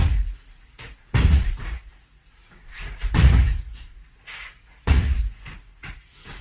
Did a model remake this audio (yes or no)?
yes